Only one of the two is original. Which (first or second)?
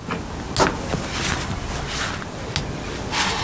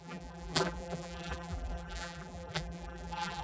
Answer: first